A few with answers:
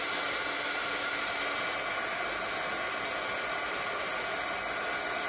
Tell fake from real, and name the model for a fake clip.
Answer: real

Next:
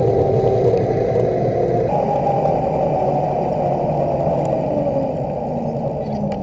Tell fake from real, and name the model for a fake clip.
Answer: real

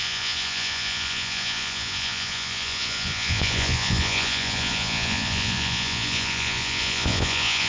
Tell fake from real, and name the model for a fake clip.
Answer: fake, vocoder, Vocos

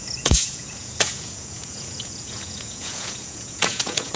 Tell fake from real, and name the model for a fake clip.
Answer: fake, vocoder, Vocos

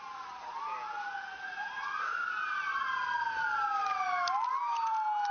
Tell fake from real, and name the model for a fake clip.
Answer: real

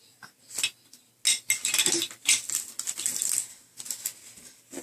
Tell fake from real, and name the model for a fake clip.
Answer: real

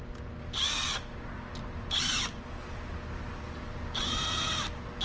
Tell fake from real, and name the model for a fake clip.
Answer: real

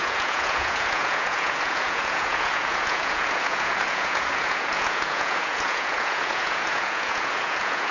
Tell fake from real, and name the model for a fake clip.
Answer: fake, vocoder, Vocos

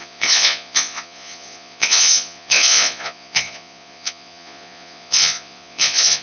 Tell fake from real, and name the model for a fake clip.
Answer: fake, vocoder, Vocos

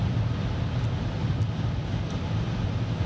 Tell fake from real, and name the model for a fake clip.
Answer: real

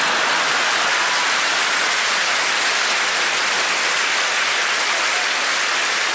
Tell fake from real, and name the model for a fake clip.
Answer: real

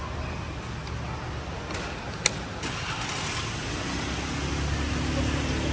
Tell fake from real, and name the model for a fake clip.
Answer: real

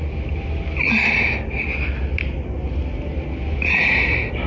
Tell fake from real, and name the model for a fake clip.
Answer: real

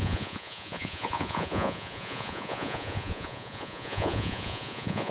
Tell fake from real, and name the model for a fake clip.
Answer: fake, vocoder, Vocos